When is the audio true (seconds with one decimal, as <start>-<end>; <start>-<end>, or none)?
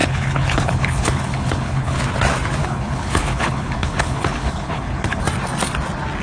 2.0-2.6; 5.2-6.2